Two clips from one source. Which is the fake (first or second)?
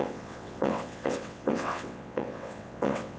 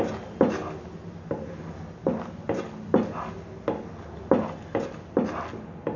first